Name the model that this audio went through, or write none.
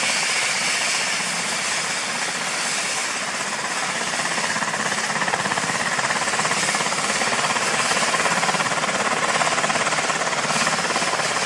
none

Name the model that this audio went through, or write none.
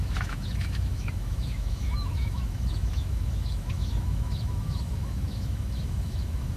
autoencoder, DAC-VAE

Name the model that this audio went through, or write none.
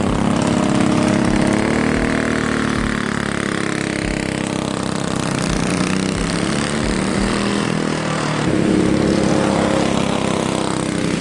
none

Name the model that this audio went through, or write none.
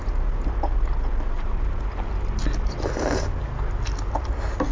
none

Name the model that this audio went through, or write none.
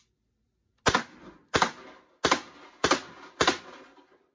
none